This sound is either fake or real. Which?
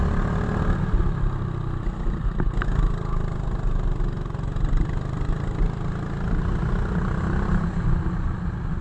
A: real